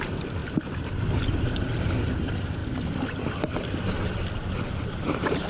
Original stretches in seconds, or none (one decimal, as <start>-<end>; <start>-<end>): 0.4-1.2; 2.6-4.7